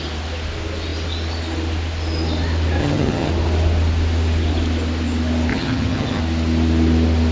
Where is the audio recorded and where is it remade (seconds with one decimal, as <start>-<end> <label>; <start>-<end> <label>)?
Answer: 0.0-2.8 recorded; 2.8-3.3 remade; 3.3-5.5 recorded; 5.5-6.2 remade; 6.2-7.3 recorded